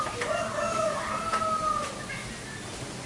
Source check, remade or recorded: recorded